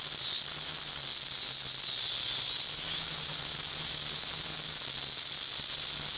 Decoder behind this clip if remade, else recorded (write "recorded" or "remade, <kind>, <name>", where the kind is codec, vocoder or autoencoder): recorded